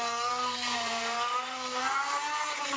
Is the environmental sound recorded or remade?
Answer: remade